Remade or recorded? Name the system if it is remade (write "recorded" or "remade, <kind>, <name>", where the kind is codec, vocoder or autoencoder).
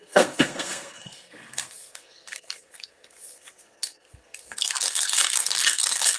remade, codec, SNAC